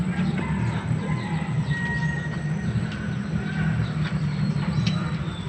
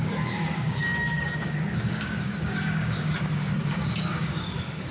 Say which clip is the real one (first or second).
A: first